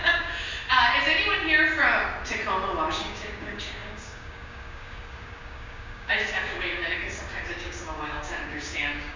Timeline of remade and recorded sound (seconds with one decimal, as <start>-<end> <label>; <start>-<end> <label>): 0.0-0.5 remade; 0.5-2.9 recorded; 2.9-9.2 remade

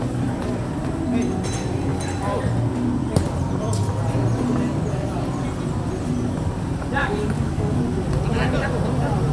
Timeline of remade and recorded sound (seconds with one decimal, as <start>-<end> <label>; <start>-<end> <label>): 0.0-7.0 recorded; 7.0-7.8 remade; 7.8-9.3 recorded

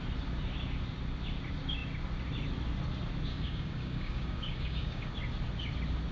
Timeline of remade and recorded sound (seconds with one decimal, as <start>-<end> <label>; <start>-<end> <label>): 0.0-3.3 recorded; 3.3-5.1 remade; 5.1-6.1 recorded

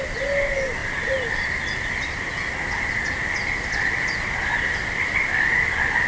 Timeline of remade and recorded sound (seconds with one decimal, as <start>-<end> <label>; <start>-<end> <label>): 0.0-6.1 recorded

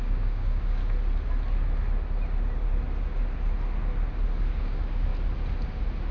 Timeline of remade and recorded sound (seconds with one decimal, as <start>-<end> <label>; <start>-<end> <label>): 0.0-0.8 remade; 0.8-4.5 recorded; 4.5-5.1 remade; 5.1-6.1 recorded

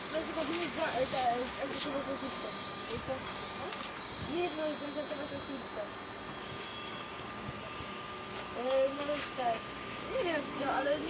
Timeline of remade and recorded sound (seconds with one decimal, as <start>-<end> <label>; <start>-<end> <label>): 0.0-4.4 remade; 4.4-6.4 recorded; 6.4-11.1 remade